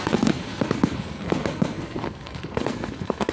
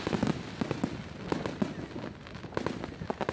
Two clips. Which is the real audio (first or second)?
second